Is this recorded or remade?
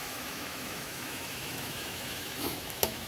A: remade